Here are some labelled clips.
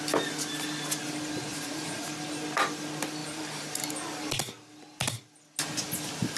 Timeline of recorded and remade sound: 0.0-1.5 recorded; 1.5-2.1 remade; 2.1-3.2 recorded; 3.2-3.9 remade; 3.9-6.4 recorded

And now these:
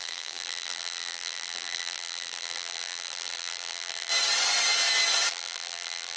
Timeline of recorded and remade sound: 0.0-4.1 remade; 4.1-5.3 recorded; 5.3-6.2 remade

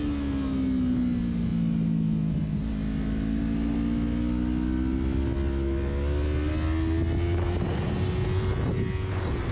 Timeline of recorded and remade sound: 0.0-9.5 recorded